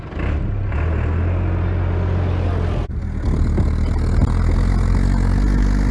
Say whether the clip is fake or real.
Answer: real